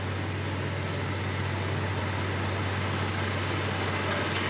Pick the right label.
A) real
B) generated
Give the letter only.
A